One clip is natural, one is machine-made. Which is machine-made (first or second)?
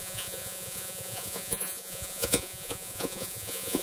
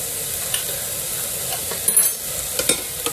first